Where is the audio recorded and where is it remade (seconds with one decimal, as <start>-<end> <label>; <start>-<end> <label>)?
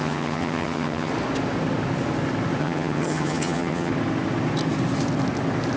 0.0-1.1 remade; 1.1-2.6 recorded; 2.6-3.9 remade; 3.9-5.8 recorded